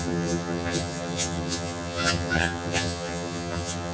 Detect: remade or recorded remade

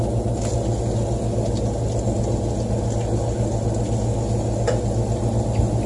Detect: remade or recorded recorded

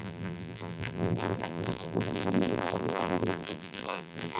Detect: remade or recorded remade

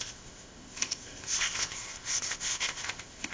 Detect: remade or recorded remade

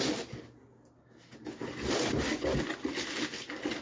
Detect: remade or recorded recorded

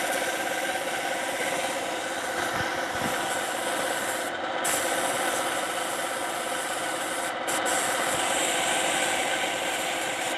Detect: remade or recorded recorded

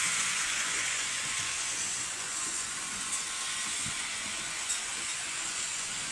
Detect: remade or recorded remade